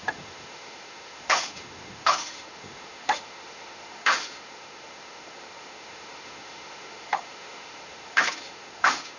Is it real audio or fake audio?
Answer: fake